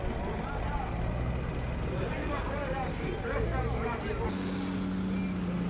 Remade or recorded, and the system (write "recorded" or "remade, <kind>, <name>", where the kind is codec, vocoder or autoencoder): recorded